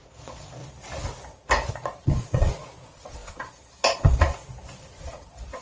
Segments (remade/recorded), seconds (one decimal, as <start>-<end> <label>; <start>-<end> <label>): 0.0-0.6 remade; 0.6-1.7 recorded; 1.7-4.5 remade; 4.5-5.0 recorded; 5.0-5.6 remade